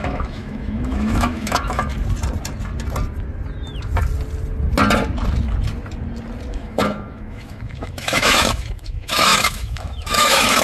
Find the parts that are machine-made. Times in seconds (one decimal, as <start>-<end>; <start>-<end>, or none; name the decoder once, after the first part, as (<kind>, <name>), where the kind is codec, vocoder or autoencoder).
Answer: 0.0-1.9 (autoencoder, DAC-VAE); 6.5-10.6